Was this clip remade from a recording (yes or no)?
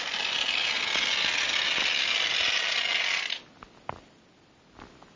no